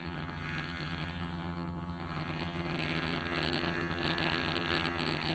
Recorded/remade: remade